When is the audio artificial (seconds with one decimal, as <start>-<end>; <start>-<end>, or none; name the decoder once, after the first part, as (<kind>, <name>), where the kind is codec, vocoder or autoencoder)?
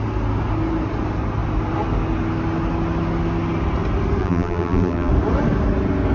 4.2-5.1 (vocoder, BigVGAN v2)